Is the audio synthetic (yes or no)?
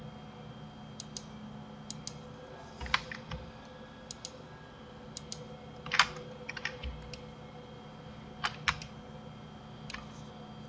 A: no